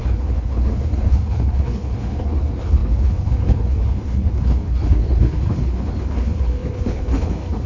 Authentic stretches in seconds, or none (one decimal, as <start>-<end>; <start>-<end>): none